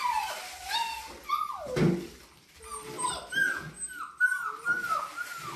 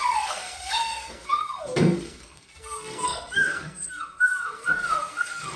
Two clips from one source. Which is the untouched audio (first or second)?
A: first